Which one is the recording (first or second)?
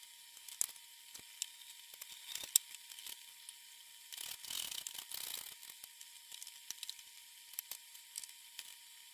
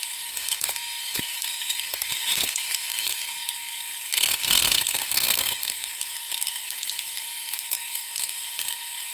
first